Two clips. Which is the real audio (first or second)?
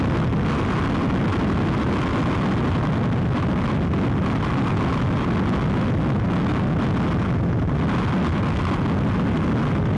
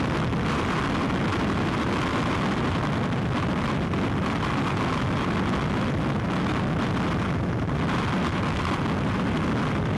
first